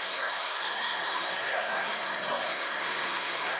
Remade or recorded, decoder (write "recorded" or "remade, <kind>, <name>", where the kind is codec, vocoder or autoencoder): remade, codec, SNAC